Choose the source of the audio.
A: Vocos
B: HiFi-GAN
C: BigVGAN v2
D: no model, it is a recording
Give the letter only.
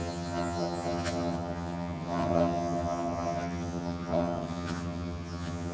B